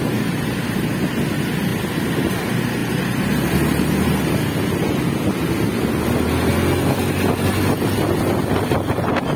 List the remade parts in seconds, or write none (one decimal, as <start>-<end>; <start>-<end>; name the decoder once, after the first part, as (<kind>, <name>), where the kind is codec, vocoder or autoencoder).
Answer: 2.8-4.4 (vocoder, BigVGAN v2)